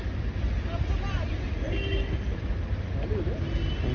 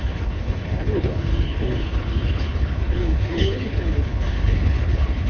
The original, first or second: first